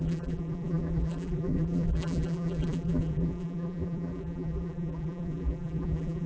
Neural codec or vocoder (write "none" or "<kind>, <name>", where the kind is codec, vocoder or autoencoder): vocoder, BigVGAN v2